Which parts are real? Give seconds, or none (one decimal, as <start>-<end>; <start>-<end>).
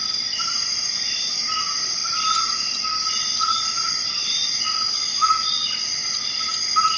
0.0-7.0